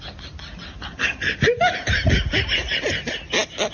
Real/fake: real